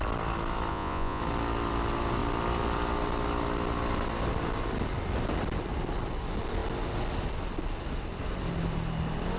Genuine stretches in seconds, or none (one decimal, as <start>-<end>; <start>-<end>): 0.0-0.7; 1.2-9.4